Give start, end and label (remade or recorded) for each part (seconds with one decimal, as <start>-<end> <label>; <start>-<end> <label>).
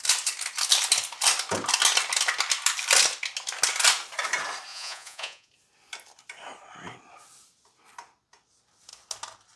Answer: 0.0-4.7 recorded; 4.7-5.5 remade; 5.5-9.6 recorded